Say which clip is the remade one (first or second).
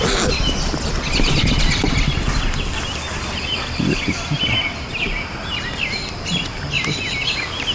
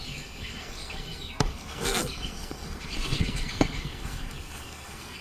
second